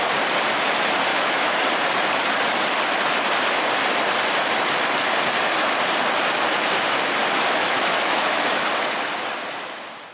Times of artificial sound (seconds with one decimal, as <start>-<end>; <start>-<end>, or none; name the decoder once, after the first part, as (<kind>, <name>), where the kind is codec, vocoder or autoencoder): 1.1-1.6 (autoencoder, DAC-VAE); 7.6-8.7